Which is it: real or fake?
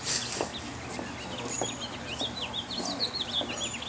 real